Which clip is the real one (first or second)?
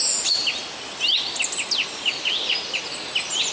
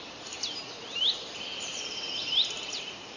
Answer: first